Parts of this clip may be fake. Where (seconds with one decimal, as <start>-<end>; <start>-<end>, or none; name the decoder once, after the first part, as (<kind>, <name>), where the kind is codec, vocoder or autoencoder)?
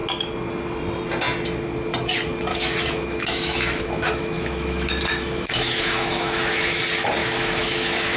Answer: 2.5-6.8 (autoencoder, DAC-VAE); 7.2-8.2